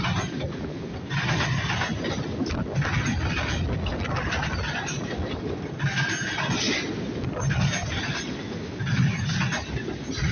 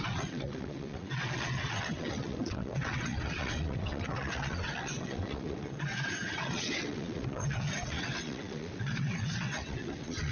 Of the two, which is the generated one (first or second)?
second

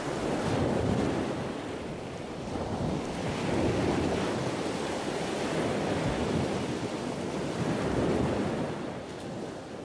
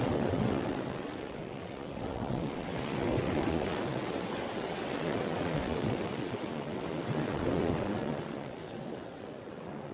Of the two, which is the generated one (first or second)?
second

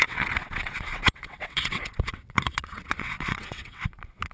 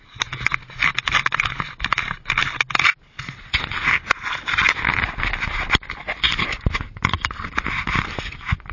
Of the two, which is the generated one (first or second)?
first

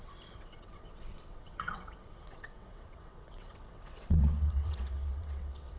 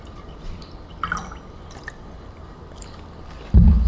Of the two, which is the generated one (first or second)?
first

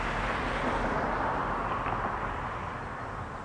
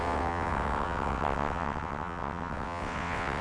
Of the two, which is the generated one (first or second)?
second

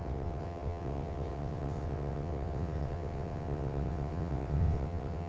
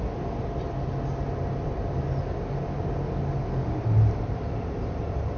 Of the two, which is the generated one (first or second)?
first